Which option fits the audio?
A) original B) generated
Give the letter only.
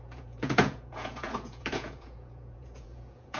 B